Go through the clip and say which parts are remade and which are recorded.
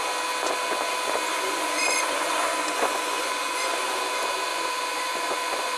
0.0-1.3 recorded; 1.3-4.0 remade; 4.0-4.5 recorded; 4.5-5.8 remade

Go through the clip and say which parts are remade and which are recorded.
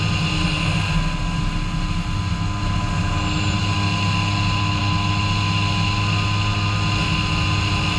0.0-8.0 recorded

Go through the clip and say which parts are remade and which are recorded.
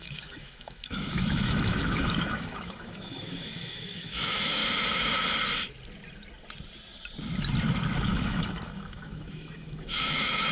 0.0-4.6 remade; 4.6-7.9 recorded; 7.9-10.5 remade